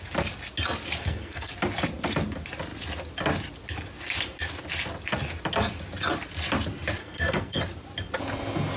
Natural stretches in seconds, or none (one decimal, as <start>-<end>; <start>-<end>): 0.0-1.0; 1.5-7.0; 7.6-8.8